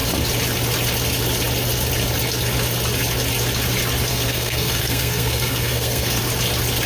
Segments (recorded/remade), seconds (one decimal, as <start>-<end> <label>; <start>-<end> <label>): 0.0-4.1 recorded; 4.1-6.2 remade; 6.2-6.9 recorded